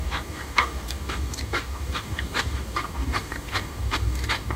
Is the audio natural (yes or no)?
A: no